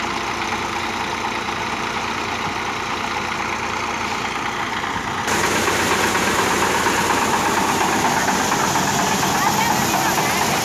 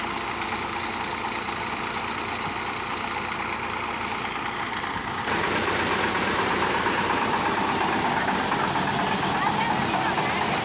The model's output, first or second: second